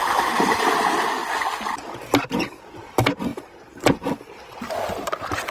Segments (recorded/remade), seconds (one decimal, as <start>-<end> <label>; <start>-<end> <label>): 0.0-0.6 remade; 0.6-5.5 recorded

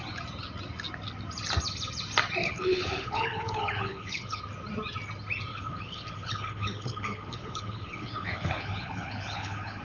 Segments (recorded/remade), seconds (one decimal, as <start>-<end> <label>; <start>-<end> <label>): 0.0-2.4 recorded; 2.4-4.4 remade; 4.4-5.5 recorded; 5.5-9.8 remade

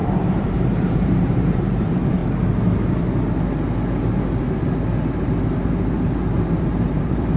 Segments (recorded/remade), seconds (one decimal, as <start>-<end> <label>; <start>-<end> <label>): 0.0-2.2 remade; 2.2-6.6 recorded; 6.6-7.4 remade

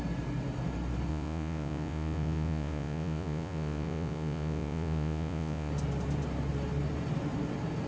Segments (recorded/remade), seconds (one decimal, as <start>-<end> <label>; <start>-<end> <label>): 0.0-1.1 recorded; 1.1-5.7 remade; 5.7-7.9 recorded

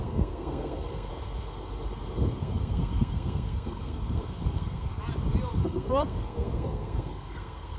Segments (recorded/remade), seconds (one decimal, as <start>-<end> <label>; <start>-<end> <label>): 0.0-1.1 remade; 1.1-2.4 recorded; 2.4-4.9 remade; 4.9-5.6 recorded; 5.6-7.8 remade